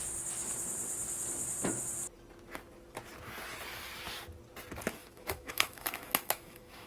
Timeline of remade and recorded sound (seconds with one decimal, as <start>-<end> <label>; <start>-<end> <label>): 0.0-5.0 recorded; 5.0-6.9 remade